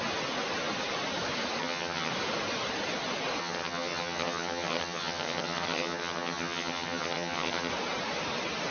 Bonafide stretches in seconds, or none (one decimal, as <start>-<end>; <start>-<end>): 0.0-1.6; 2.1-3.4; 7.7-8.7